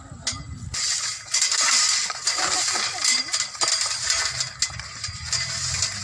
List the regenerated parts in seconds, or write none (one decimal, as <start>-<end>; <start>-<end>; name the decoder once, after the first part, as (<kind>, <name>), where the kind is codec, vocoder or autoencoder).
2.0-3.5 (vocoder, BigVGAN v2)